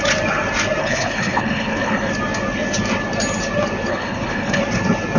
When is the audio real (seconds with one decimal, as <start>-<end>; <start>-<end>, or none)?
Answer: 0.0-0.8; 2.1-3.9; 4.6-5.2